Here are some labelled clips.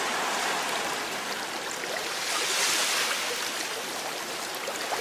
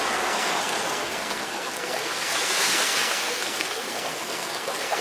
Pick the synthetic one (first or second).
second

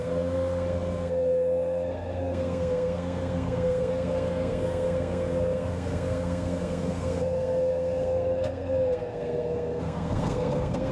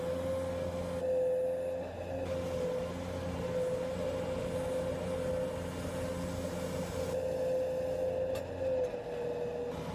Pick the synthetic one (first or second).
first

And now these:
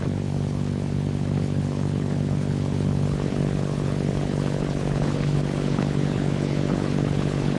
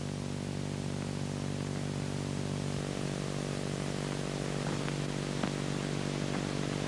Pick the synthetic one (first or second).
first